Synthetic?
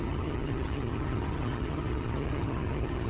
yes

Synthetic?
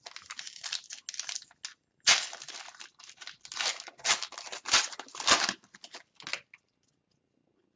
no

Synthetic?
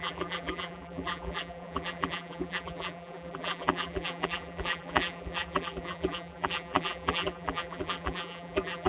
yes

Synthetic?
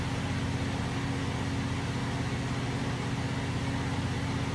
no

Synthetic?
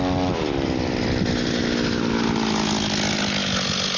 no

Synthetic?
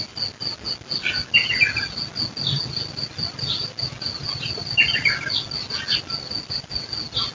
no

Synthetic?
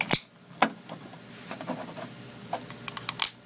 no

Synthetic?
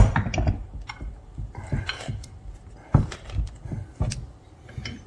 yes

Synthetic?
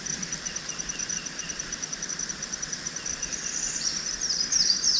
yes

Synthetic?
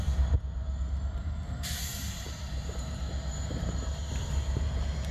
yes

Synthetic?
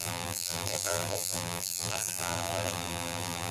yes